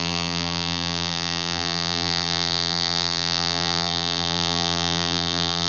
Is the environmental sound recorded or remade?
remade